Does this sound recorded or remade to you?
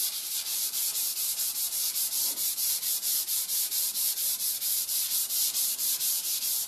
remade